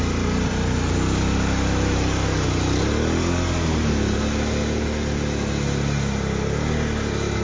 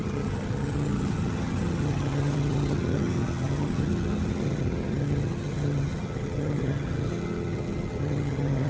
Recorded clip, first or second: first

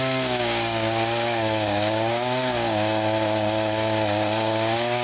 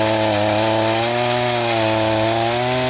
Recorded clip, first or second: second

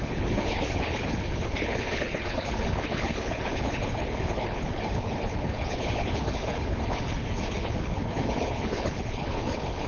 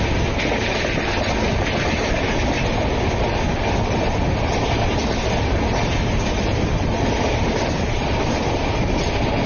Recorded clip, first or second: second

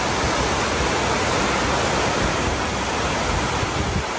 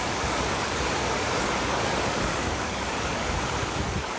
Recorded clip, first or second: first